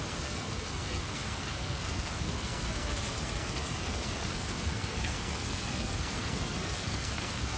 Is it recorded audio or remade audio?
remade